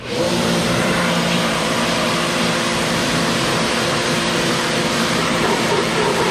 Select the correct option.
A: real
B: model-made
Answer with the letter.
B